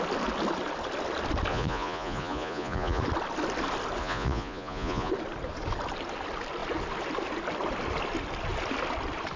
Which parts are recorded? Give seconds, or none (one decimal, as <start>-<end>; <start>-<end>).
0.0-1.5; 3.0-4.0; 5.1-9.4